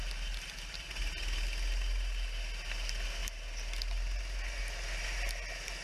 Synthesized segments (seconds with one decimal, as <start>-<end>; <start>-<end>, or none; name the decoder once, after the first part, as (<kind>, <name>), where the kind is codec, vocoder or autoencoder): none